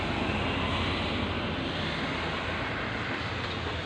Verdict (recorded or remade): recorded